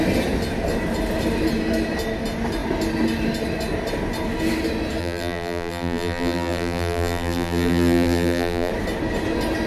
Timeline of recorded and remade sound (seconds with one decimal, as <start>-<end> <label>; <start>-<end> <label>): 0.0-5.0 recorded; 5.0-8.7 remade; 8.7-9.7 recorded